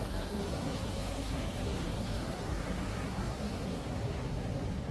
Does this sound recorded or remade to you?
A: remade